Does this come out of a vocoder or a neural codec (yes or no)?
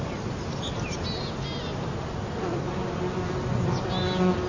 no